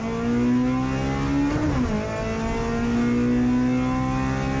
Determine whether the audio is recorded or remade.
recorded